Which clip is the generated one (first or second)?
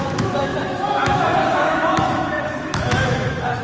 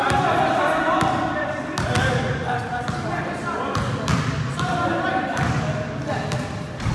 first